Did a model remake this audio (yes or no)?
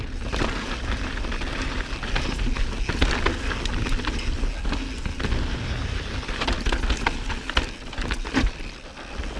no